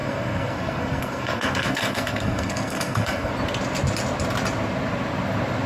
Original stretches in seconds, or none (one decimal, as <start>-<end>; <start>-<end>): 3.3-5.7